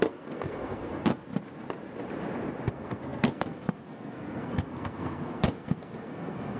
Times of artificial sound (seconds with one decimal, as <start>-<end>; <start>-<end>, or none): 0.0-1.3; 2.7-6.6